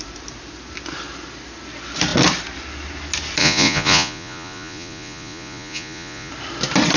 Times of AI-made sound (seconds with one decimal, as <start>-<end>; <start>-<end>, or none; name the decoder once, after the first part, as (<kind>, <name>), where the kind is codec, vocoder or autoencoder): 3.4-6.3 (vocoder, Vocos)